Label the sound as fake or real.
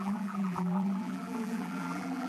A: fake